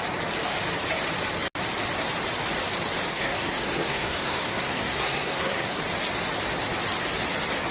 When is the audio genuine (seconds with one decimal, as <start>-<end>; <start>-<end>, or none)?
0.0-3.1; 5.8-7.7